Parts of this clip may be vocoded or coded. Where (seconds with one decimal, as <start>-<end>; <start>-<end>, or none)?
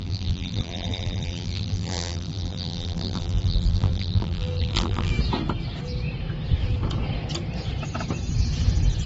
0.0-5.1